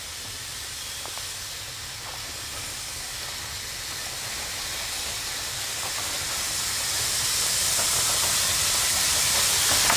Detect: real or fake real